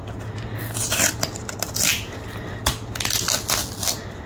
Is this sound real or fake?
real